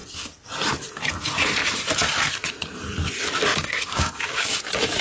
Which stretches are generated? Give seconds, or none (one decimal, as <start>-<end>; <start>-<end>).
3.5-4.6